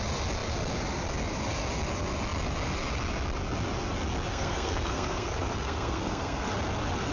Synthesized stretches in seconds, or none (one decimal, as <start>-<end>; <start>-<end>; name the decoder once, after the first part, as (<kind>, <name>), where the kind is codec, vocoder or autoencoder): 4.3-6.5 (codec, SNAC)